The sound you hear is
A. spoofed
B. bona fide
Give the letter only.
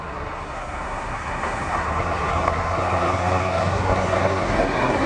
A